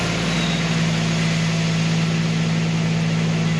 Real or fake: real